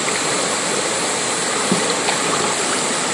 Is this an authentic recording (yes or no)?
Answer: yes